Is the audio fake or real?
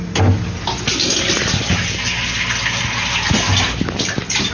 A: real